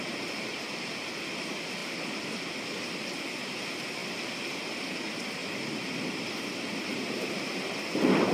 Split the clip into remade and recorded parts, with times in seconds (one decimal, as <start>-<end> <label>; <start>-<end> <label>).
0.0-4.0 recorded; 4.0-5.0 remade; 5.0-8.3 recorded